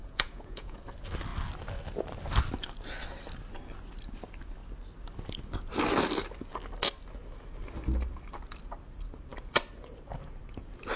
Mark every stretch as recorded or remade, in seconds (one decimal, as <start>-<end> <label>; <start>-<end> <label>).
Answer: 0.0-0.8 remade; 0.8-11.0 recorded